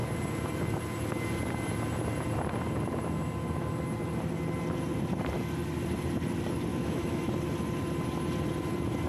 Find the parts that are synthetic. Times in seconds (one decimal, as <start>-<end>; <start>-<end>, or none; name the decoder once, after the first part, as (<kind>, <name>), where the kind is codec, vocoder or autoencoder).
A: 6.7-7.3 (autoencoder, DAC-VAE)